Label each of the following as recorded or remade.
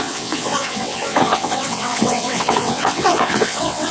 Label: remade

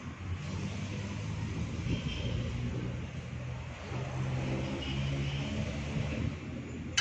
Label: recorded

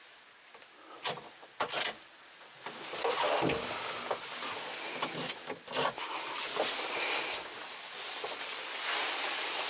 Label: recorded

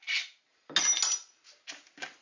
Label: recorded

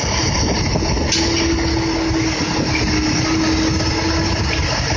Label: recorded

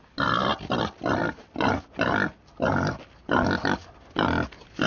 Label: recorded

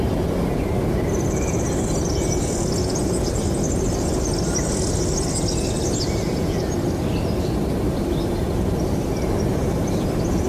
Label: recorded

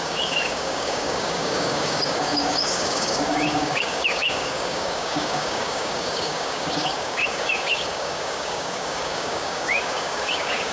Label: remade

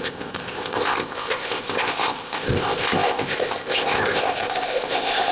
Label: remade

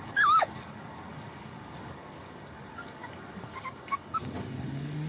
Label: remade